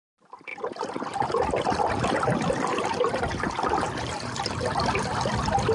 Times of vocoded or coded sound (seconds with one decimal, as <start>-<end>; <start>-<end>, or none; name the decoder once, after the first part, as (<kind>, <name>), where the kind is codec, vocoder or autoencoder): none